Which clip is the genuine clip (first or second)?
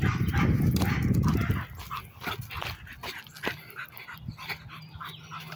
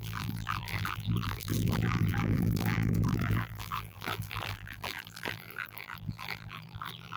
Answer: first